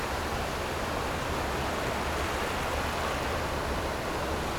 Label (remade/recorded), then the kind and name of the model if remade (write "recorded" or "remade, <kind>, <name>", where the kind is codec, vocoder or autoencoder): recorded